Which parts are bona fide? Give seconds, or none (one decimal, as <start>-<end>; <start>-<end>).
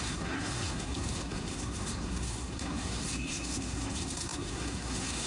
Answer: none